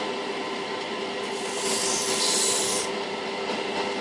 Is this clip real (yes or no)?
yes